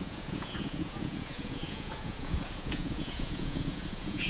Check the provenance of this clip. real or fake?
fake